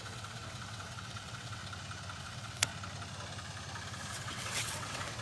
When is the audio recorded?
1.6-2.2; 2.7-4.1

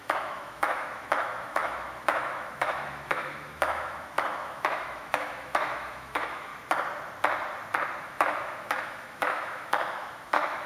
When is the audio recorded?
6.5-8.0

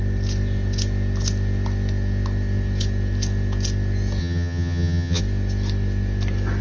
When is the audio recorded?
0.0-4.2; 5.2-6.6

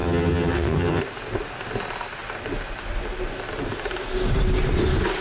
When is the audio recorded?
1.0-5.2

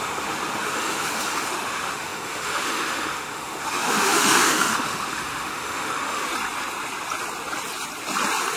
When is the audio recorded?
6.2-8.6

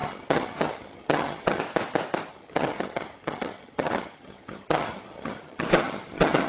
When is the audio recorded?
1.6-2.3

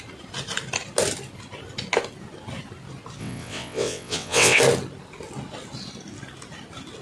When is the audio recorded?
0.0-3.2; 4.6-7.0